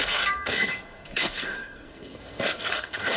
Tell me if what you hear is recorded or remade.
remade